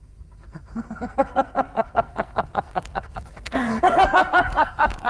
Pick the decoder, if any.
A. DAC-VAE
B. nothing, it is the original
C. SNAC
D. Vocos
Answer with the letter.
C